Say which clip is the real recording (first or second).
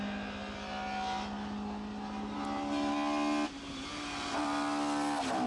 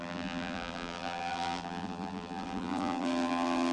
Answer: first